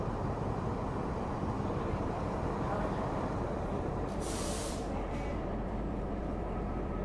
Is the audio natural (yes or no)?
no